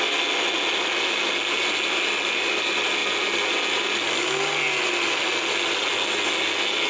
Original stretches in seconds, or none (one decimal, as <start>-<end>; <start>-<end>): 0.0-6.9